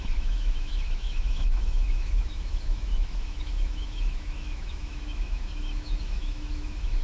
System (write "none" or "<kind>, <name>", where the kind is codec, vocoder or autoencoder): autoencoder, DAC-VAE